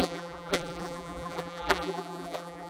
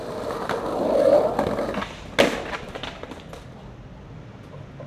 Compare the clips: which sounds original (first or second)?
second